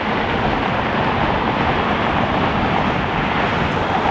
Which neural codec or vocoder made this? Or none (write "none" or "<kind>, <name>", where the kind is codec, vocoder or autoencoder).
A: none